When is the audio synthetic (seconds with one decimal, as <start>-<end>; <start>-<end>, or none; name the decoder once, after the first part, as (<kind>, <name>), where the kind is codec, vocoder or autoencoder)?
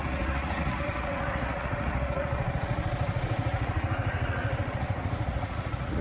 0.0-6.0 (vocoder, Vocos)